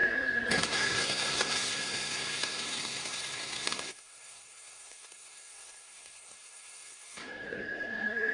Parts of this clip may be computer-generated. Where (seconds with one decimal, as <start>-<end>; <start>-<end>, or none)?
0.0-8.3